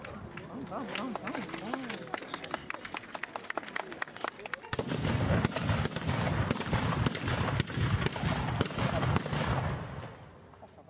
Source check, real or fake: real